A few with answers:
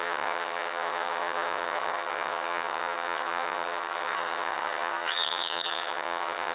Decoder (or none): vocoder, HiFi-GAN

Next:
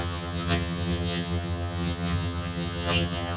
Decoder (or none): vocoder, HiFi-GAN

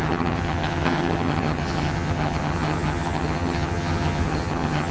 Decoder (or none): vocoder, HiFi-GAN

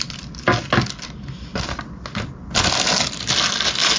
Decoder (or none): none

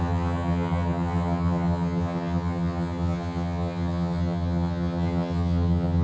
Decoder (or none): vocoder, HiFi-GAN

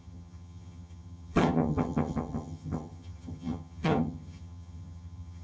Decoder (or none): vocoder, HiFi-GAN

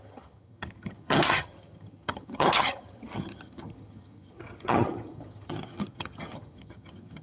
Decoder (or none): vocoder, HiFi-GAN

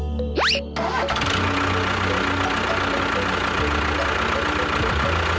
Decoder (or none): none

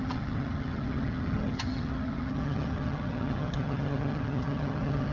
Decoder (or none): vocoder, HiFi-GAN